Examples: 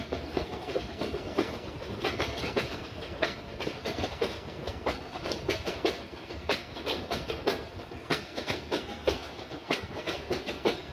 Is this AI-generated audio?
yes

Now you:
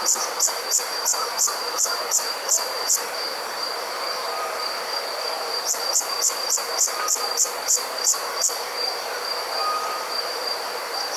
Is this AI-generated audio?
yes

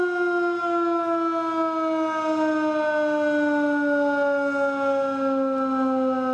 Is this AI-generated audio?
no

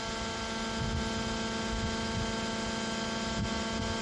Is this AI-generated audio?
no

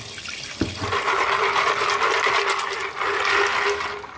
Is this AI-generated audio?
no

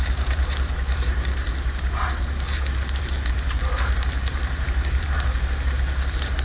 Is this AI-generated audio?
yes